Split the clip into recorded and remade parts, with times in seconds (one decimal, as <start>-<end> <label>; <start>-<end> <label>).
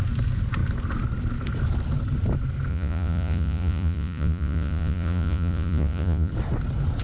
0.0-2.7 recorded; 2.7-6.3 remade; 6.3-7.0 recorded